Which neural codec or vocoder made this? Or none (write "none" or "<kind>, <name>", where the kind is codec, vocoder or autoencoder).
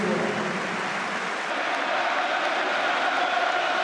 none